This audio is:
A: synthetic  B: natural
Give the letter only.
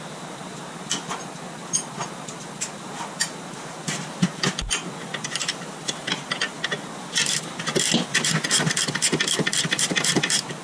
B